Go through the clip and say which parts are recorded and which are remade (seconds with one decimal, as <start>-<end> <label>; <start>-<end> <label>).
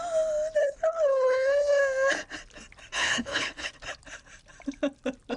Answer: 0.0-0.6 recorded; 0.6-1.8 remade; 1.8-2.9 recorded; 2.9-3.7 remade; 3.7-5.4 recorded